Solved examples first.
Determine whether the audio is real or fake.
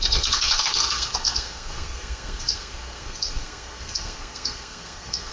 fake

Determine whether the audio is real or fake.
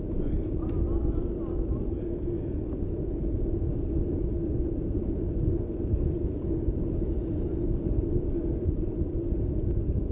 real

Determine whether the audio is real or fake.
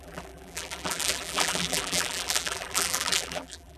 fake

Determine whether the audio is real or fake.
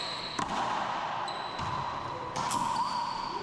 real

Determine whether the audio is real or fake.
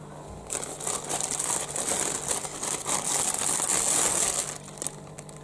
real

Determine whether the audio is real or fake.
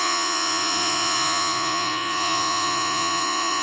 fake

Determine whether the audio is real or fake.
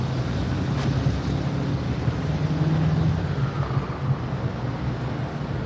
real